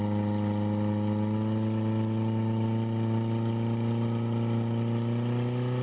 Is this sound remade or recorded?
recorded